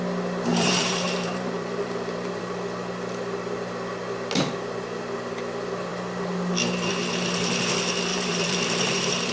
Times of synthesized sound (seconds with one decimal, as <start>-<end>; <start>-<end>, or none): 0.5-2.4; 8.1-9.3